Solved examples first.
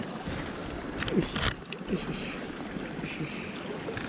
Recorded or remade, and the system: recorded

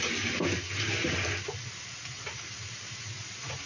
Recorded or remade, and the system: recorded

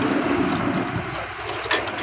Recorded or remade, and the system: recorded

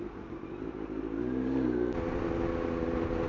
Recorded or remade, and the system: recorded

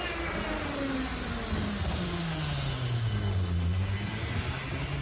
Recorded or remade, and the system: recorded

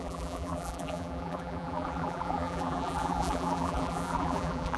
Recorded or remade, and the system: remade, vocoder, BigVGAN v2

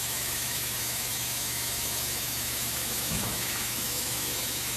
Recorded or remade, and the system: remade, autoencoder, DAC-VAE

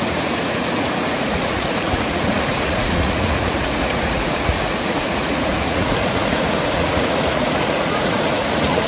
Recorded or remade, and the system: remade, vocoder, Vocos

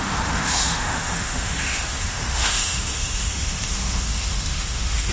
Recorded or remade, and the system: remade, autoencoder, DAC-VAE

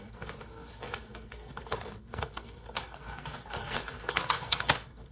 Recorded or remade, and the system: remade, codec, SNAC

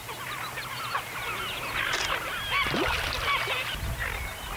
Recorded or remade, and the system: recorded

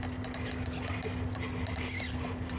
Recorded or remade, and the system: recorded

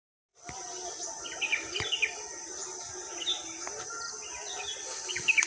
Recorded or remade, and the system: recorded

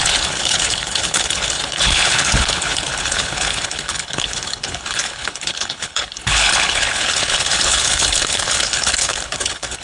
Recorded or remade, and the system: remade, codec, HILCodec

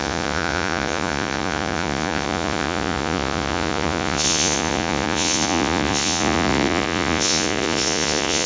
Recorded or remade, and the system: remade, vocoder, Vocos